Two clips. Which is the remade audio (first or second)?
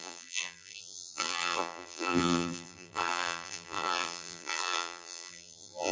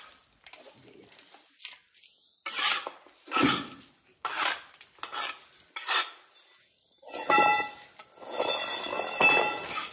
first